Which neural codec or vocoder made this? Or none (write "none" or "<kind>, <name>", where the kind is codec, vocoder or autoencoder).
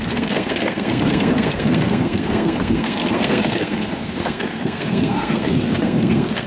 codec, SNAC